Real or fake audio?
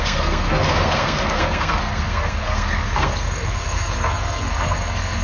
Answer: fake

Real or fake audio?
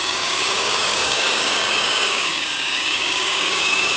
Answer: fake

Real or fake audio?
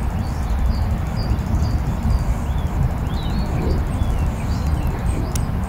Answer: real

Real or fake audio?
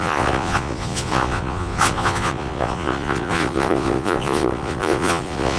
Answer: fake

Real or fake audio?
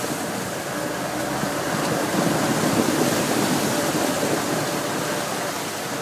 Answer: real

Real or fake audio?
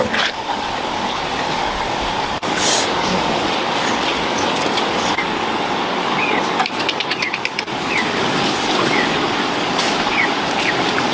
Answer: fake